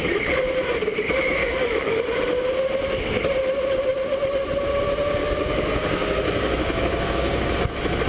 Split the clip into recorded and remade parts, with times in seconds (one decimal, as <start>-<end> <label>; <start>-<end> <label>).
0.0-1.4 recorded; 1.4-2.0 remade; 2.0-5.2 recorded; 5.2-7.5 remade; 7.5-8.1 recorded